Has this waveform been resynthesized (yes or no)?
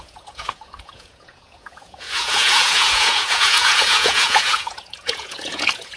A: yes